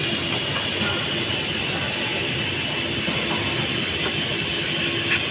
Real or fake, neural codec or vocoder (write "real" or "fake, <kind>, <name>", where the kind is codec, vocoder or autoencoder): real